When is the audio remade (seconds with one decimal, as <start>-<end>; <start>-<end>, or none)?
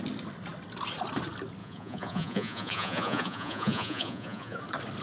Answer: 1.6-4.6